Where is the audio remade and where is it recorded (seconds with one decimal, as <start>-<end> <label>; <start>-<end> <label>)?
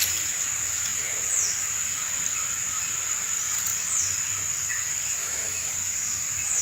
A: 0.0-5.2 recorded; 5.2-5.7 remade; 5.7-6.6 recorded